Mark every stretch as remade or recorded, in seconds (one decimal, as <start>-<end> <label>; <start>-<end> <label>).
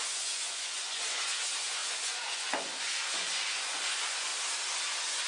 0.0-4.3 remade; 4.3-4.8 recorded; 4.8-5.3 remade